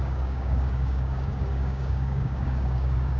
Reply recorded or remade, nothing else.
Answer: remade